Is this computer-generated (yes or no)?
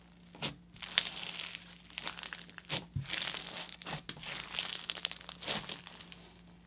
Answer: no